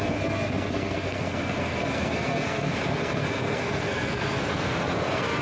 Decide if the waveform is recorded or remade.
remade